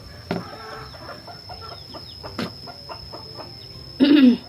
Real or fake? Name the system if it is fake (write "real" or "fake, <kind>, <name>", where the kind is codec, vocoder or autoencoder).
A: real